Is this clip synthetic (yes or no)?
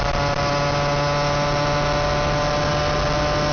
no